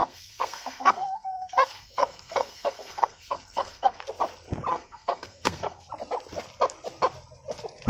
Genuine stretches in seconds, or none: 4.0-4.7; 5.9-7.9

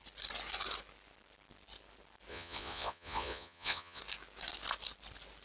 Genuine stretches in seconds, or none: 0.0-2.3; 4.0-5.4